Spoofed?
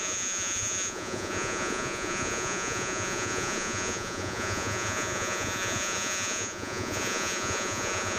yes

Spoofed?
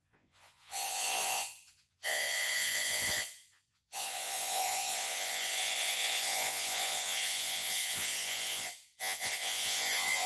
yes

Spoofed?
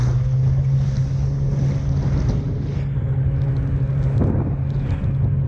no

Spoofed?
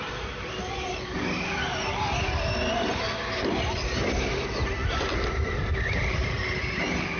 no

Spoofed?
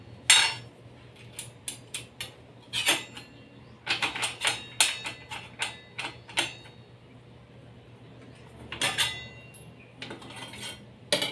no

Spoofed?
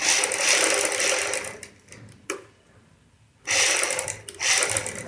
no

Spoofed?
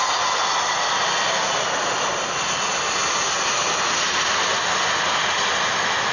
no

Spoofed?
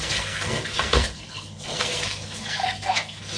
yes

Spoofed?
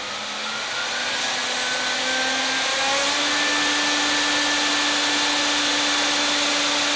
no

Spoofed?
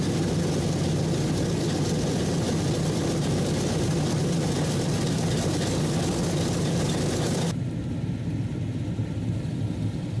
no